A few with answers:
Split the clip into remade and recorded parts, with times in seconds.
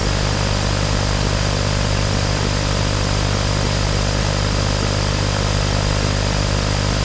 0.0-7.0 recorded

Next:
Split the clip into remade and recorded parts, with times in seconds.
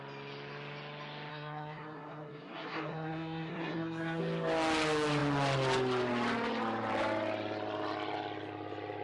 0.0-1.3 recorded; 1.3-4.2 remade; 4.2-9.0 recorded